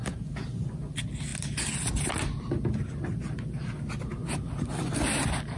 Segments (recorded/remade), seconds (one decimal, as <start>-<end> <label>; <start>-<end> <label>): 0.0-5.6 recorded